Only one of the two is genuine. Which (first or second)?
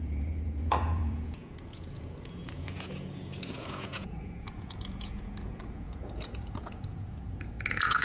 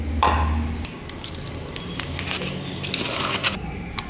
second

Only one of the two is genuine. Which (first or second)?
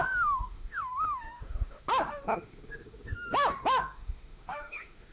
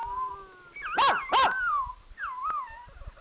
second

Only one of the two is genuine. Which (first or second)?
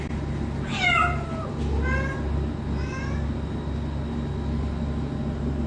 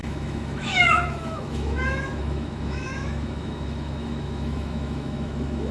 first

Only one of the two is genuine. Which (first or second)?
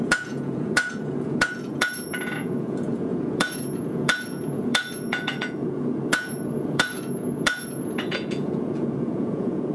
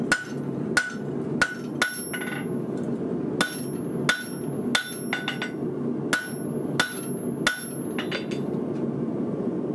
second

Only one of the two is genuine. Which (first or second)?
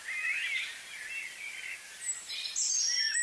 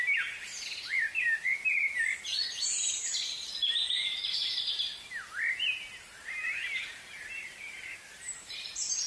first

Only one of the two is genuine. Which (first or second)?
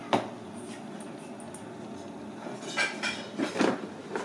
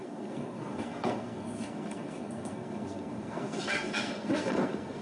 first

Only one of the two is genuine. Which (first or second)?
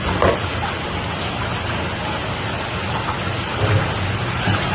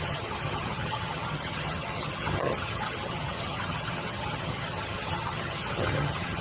first